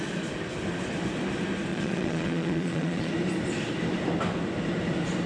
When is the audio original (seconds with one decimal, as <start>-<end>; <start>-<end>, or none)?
0.0-1.7; 3.1-5.3